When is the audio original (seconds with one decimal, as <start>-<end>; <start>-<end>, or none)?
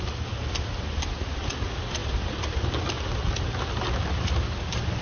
0.0-5.0